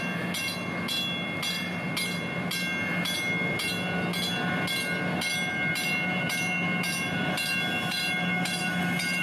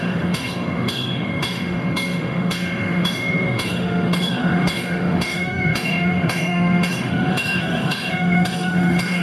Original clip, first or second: first